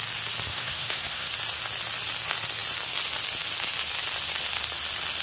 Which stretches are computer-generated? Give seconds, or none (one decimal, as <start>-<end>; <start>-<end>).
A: 0.5-1.3